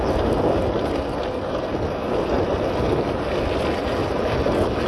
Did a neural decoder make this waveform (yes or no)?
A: no